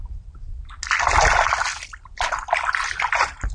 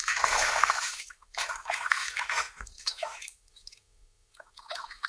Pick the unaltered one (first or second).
first